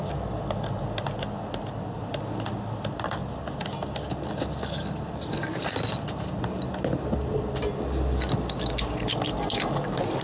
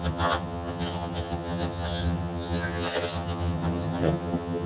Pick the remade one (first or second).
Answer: second